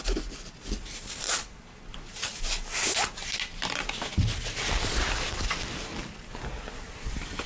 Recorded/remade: recorded